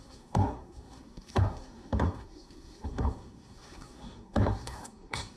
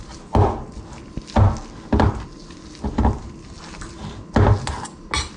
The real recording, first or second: second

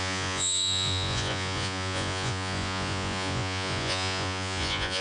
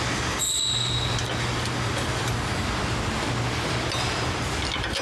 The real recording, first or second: second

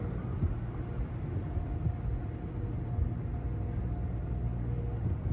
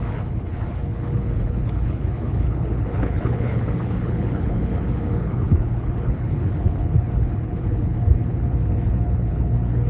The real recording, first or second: first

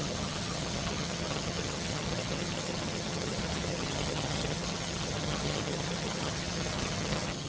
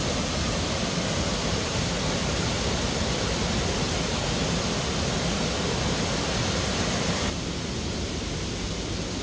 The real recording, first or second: second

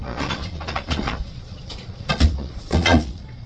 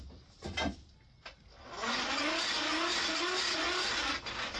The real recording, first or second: second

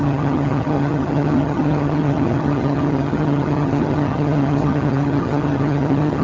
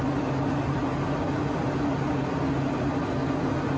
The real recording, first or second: second